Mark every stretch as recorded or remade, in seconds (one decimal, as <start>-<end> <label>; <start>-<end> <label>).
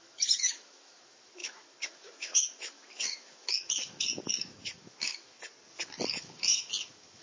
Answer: 0.0-5.5 remade; 5.5-6.1 recorded; 6.1-7.2 remade